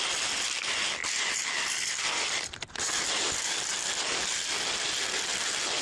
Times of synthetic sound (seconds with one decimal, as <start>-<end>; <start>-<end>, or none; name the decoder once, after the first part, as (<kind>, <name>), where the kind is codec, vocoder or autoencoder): 1.0-4.5 (vocoder, BigVGAN v2)